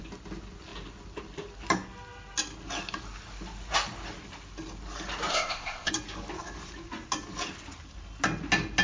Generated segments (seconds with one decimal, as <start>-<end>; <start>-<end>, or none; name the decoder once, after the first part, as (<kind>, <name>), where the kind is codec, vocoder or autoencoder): 5.3-5.9 (codec, ZipCodec)